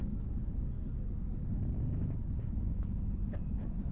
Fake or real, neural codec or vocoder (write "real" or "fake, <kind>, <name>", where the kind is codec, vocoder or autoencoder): real